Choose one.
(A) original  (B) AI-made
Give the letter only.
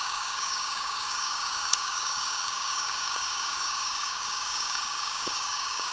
B